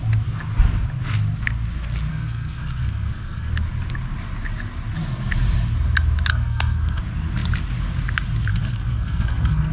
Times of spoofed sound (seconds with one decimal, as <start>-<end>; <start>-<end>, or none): 2.1-3.5; 6.3-7.0; 8.5-9.7